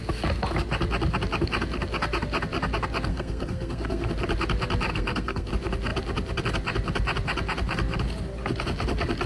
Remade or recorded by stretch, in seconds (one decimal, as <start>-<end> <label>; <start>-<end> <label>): 0.0-3.1 recorded; 3.1-4.1 remade; 4.1-4.9 recorded; 4.9-5.5 remade; 5.5-9.3 recorded